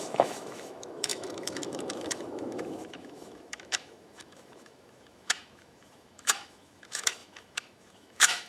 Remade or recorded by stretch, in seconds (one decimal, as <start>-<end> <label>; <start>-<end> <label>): 0.0-8.5 remade